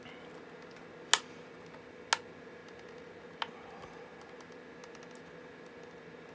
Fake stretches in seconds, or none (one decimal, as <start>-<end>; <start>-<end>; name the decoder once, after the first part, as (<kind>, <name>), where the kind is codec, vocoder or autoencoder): none